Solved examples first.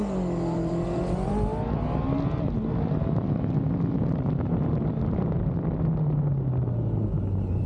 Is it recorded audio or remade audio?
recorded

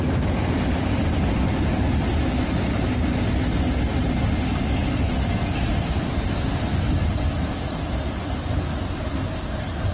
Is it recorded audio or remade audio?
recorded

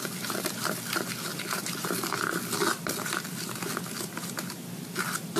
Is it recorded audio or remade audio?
recorded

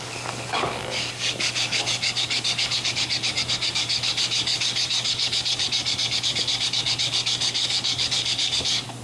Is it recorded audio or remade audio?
remade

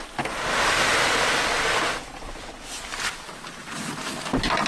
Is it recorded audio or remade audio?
recorded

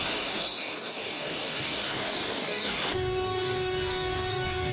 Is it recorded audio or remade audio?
remade